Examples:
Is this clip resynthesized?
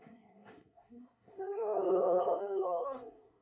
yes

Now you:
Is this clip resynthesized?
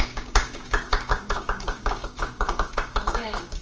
yes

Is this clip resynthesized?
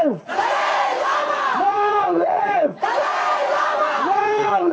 yes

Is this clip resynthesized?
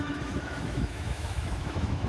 yes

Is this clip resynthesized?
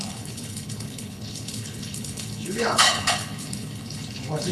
yes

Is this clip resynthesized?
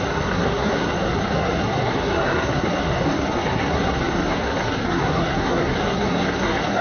yes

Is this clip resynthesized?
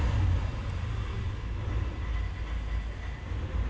no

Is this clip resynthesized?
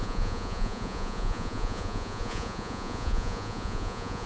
yes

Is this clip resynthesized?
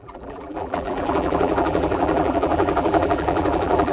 yes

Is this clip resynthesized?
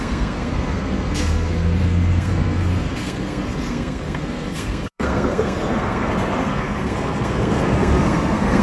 yes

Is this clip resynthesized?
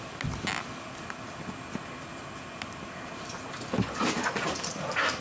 no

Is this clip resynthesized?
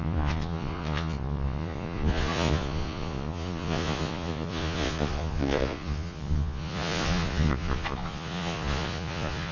yes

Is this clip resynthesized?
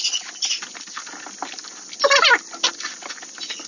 no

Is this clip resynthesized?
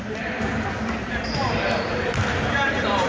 yes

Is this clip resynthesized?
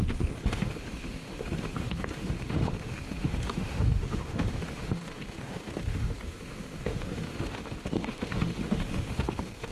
yes